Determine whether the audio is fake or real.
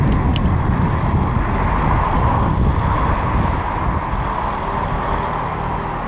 real